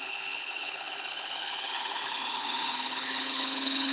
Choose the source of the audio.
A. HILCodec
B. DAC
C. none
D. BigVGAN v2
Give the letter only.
A